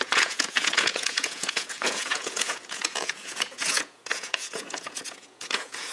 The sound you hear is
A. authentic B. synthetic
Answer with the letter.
B